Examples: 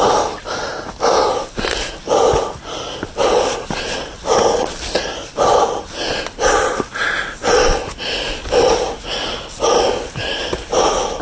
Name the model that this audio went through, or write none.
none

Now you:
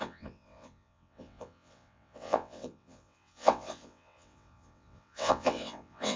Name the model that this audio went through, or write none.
vocoder, WaveNeXt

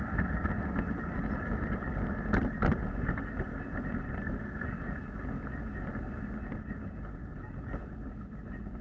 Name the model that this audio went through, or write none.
none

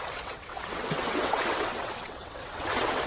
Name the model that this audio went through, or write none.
vocoder, WaveNeXt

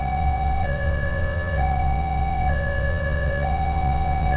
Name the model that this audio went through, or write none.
vocoder, WaveNeXt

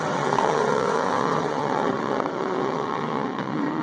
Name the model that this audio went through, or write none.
vocoder, WaveNeXt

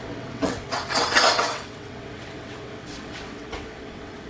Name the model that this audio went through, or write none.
vocoder, WaveNeXt